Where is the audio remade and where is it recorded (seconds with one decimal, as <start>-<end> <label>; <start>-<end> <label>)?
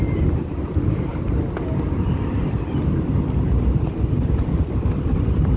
0.0-5.6 recorded